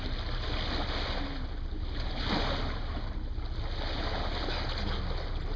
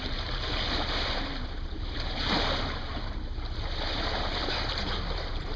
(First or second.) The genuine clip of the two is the first